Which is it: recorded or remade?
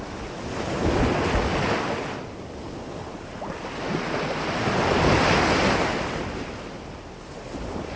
recorded